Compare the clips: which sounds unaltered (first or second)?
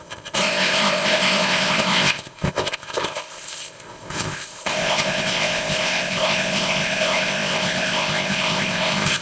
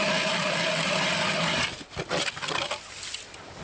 second